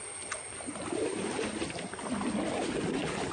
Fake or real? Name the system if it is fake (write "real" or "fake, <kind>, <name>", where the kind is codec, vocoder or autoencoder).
real